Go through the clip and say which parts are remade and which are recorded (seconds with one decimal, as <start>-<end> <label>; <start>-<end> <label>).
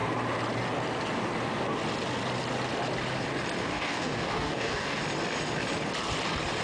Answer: 0.0-3.6 recorded; 3.6-5.0 remade; 5.0-6.6 recorded